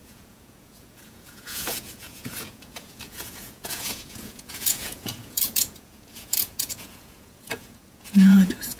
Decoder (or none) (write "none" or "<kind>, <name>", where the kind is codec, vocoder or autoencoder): vocoder, Vocos